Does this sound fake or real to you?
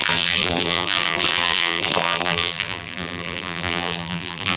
fake